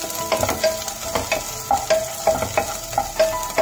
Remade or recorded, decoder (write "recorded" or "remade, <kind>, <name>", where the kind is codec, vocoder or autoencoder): recorded